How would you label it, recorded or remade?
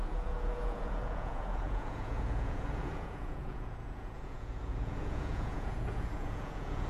remade